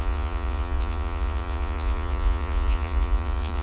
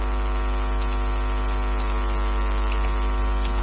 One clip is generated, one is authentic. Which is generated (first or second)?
first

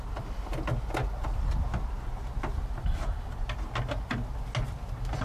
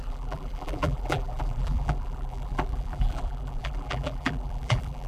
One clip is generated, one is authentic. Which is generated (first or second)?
second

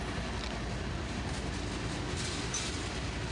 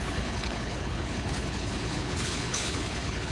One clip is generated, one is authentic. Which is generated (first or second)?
second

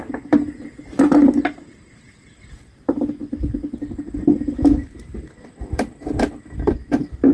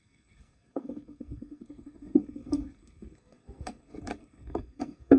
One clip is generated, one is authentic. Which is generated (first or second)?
second